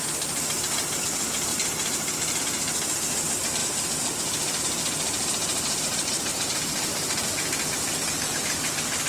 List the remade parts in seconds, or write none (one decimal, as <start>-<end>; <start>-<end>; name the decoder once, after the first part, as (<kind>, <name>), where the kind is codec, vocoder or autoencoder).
3.6-4.6 (vocoder, BigVGAN v2); 5.5-6.9